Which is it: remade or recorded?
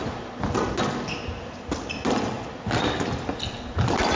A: recorded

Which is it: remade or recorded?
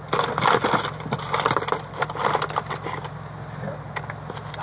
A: recorded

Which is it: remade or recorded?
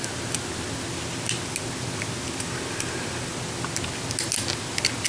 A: recorded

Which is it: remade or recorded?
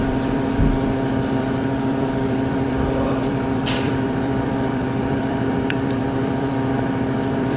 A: remade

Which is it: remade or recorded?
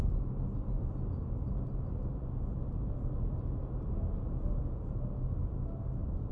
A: recorded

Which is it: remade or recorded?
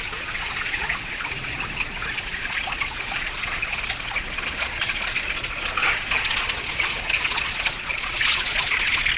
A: remade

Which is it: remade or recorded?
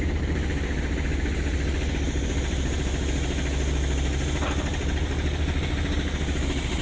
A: recorded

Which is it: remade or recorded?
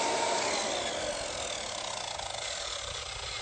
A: recorded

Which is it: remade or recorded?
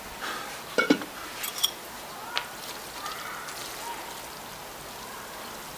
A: recorded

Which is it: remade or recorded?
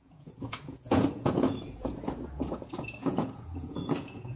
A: remade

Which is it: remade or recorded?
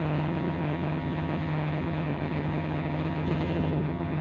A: remade